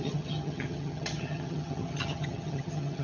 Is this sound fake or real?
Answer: fake